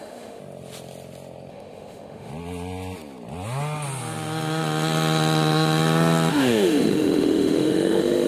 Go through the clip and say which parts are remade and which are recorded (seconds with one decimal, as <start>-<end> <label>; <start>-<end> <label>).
0.0-0.4 remade; 0.4-1.5 recorded; 1.5-2.3 remade; 2.3-6.3 recorded; 6.3-8.3 remade